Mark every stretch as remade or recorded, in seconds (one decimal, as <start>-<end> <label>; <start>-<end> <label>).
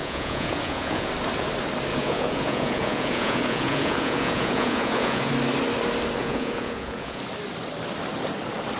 0.0-1.1 remade; 1.1-1.9 recorded; 1.9-5.3 remade; 5.3-6.2 recorded; 6.2-7.2 remade; 7.2-8.8 recorded